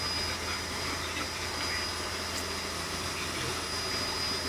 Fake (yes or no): no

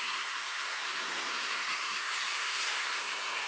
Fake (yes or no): yes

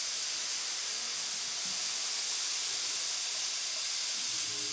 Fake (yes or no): no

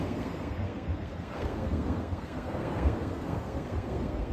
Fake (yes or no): yes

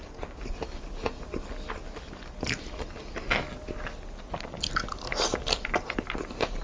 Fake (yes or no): no